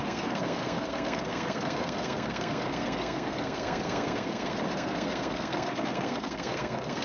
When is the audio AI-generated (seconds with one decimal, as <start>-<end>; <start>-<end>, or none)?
0.0-7.0